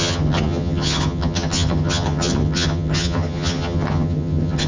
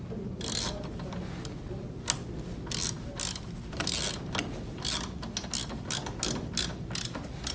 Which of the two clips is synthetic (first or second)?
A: first